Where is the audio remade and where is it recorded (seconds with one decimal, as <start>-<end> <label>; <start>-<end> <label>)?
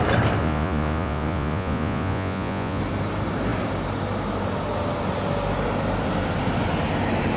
0.0-0.4 recorded; 0.4-2.8 remade; 2.8-7.4 recorded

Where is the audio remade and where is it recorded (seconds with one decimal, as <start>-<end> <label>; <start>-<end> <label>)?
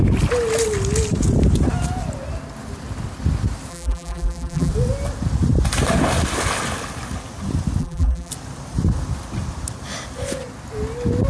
0.0-3.7 recorded; 3.7-4.7 remade; 4.7-7.8 recorded; 7.8-8.3 remade; 8.3-11.3 recorded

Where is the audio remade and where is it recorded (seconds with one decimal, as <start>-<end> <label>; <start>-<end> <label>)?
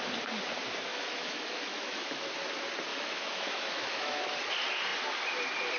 0.0-0.9 recorded; 0.9-2.3 remade; 2.3-2.9 recorded; 2.9-4.3 remade; 4.3-5.8 recorded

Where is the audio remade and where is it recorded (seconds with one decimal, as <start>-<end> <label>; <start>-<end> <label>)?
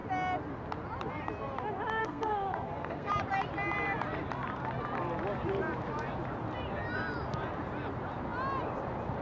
0.0-2.0 recorded; 2.0-3.1 remade; 3.1-9.2 recorded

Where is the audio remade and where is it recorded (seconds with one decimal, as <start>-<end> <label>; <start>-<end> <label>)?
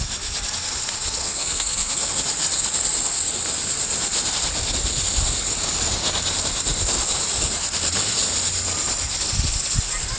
0.0-1.2 recorded; 1.2-2.1 remade; 2.1-10.2 recorded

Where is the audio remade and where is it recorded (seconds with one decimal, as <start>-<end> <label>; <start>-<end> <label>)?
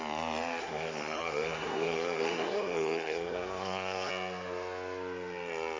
0.0-0.6 recorded; 0.6-4.1 remade; 4.1-5.8 recorded